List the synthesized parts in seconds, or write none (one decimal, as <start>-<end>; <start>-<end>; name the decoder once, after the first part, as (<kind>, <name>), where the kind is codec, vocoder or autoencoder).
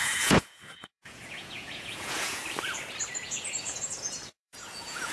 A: 0.0-2.4 (vocoder, Vocos); 3.2-5.1